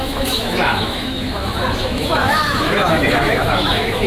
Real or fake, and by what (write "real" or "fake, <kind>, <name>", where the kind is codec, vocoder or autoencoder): fake, autoencoder, DAC-VAE